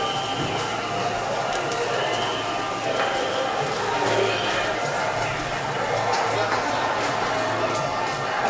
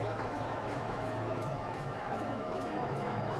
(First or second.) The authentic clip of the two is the first